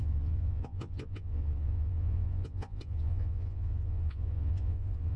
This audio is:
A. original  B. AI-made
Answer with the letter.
B